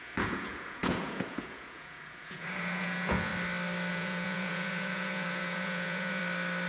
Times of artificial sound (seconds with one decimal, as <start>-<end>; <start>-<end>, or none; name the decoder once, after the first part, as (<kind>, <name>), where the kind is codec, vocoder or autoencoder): 0.0-3.3 (vocoder, Vocos); 3.9-6.2